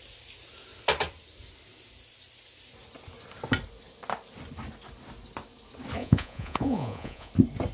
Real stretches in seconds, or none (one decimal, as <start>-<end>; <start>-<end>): 0.0-6.0; 7.3-7.7